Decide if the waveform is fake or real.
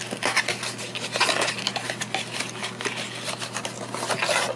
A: real